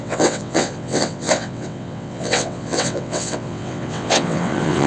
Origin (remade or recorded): remade